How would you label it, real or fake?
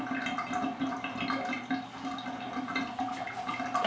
real